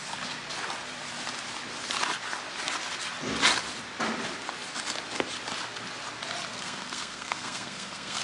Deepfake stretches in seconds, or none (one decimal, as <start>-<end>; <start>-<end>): 6.5-8.2